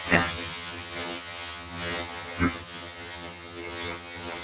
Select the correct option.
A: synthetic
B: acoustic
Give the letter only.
A